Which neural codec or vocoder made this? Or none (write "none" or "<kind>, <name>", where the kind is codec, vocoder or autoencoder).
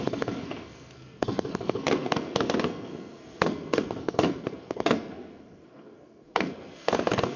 codec, SNAC